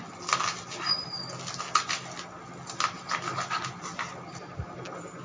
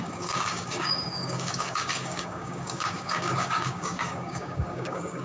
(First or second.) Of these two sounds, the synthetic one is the second